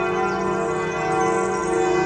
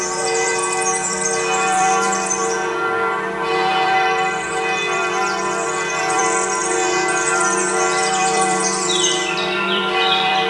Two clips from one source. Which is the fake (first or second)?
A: second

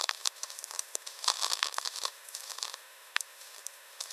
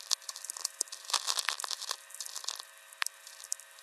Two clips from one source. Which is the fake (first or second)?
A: first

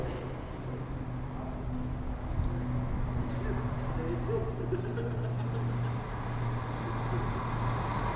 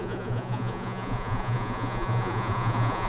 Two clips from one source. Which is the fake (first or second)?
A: second